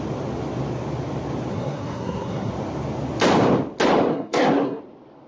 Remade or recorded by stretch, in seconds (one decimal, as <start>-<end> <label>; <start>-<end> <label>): 0.0-1.5 recorded; 1.5-2.5 remade; 2.5-4.1 recorded; 4.1-4.8 remade; 4.8-5.3 recorded